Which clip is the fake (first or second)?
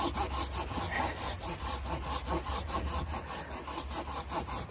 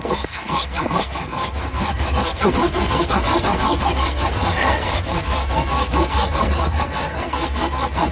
second